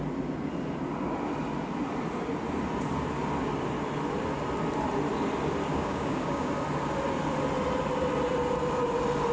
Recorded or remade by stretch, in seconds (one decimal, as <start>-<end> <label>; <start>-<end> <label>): 0.0-5.7 recorded; 5.7-6.5 remade; 6.5-9.3 recorded